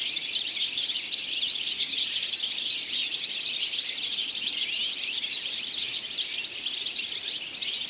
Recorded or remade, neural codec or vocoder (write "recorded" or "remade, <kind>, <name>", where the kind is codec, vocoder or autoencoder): remade, vocoder, BigVGAN v2